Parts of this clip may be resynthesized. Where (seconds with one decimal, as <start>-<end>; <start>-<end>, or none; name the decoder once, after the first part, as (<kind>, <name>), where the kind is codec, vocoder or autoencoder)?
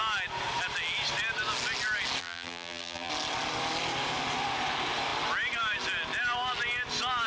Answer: 2.2-3.1 (vocoder, BigVGAN v2)